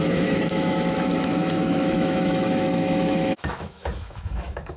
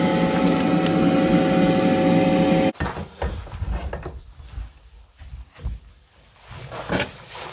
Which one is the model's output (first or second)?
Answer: first